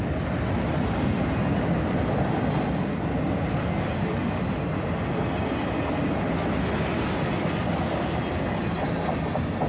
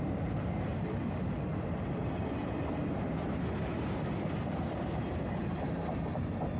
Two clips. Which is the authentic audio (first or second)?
first